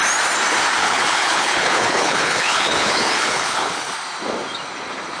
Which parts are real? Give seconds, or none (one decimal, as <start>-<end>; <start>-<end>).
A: 0.0-0.8; 3.9-5.2